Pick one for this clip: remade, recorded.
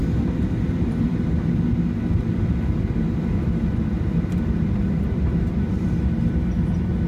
recorded